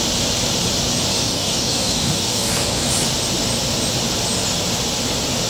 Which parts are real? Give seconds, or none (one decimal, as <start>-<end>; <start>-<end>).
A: 0.0-1.1; 2.9-5.5

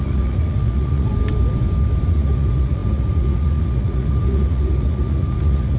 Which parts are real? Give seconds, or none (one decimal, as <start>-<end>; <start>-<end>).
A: 1.1-2.1

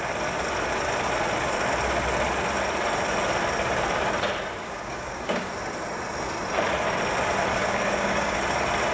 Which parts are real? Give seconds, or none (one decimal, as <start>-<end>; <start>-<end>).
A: 0.0-4.6; 5.5-7.5; 8.4-8.9

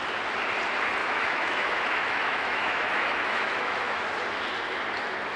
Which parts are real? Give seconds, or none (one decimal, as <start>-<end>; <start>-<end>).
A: 0.0-1.0; 4.2-5.4

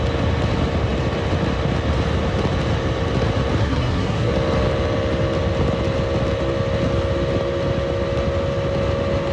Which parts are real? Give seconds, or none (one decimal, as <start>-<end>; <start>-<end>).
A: 0.0-3.6; 4.3-9.3